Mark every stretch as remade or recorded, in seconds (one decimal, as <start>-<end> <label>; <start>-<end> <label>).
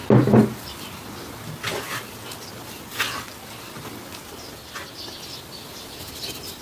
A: 0.0-6.6 recorded